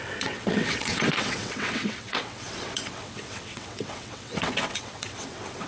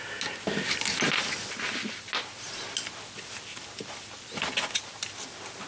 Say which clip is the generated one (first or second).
first